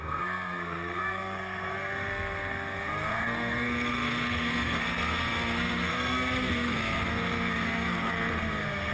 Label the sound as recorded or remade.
remade